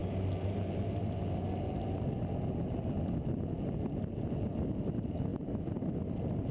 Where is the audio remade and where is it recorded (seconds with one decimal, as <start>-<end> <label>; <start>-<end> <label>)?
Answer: 0.0-6.5 recorded